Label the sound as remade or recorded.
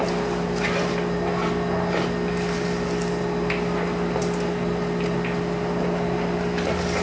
recorded